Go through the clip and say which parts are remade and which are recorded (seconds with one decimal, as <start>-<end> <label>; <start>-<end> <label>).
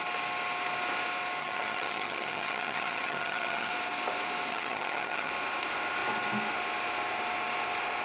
0.0-1.4 recorded; 1.4-3.7 remade; 3.7-4.5 recorded; 4.5-5.3 remade; 5.3-8.0 recorded